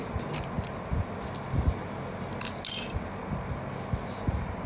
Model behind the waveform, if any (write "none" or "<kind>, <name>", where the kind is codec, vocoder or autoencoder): none